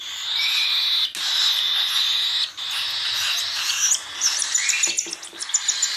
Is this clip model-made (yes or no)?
no